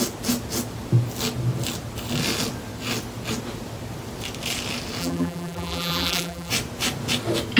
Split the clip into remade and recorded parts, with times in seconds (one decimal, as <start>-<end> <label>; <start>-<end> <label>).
0.0-5.0 recorded; 5.0-6.5 remade; 6.5-7.6 recorded